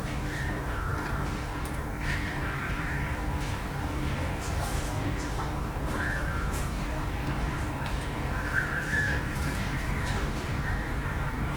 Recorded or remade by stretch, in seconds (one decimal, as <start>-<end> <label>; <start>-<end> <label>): 0.0-11.6 remade